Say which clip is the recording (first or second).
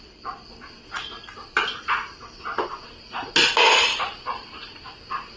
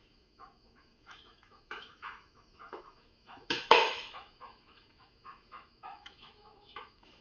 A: first